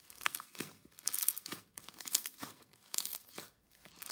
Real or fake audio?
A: fake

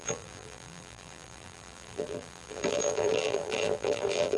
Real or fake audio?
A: fake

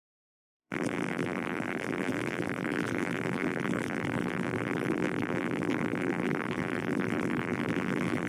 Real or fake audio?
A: fake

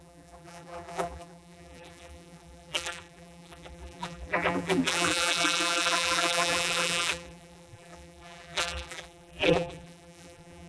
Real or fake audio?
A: fake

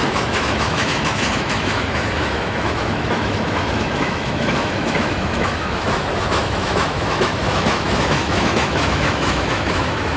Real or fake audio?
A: fake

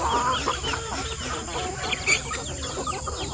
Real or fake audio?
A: real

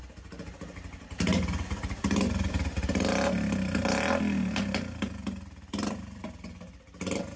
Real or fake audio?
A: real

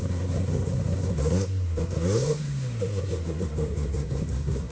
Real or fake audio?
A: fake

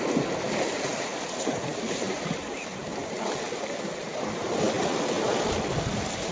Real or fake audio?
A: real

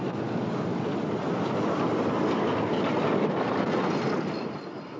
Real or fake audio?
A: real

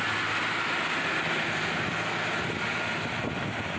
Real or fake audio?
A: real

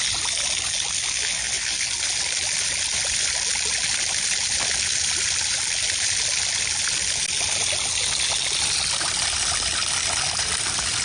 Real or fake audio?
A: real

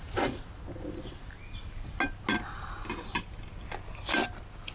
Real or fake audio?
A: real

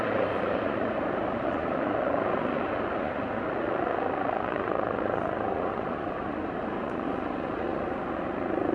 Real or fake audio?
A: fake